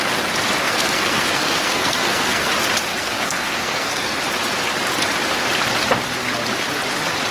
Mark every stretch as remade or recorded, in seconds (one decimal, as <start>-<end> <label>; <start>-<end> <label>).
0.0-0.6 recorded; 0.6-2.5 remade; 2.5-2.9 recorded; 2.9-4.2 remade; 4.2-7.3 recorded